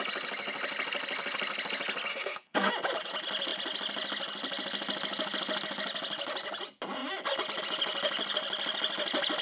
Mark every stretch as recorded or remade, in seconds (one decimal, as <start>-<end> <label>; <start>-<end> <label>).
0.0-2.1 recorded; 2.1-2.7 remade; 2.7-9.4 recorded